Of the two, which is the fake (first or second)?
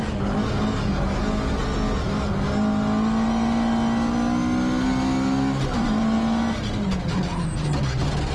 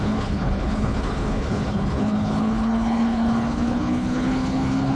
second